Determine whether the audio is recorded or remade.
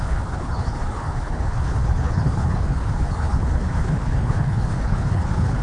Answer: remade